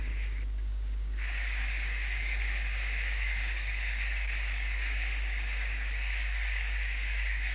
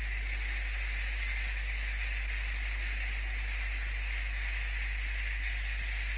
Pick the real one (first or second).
second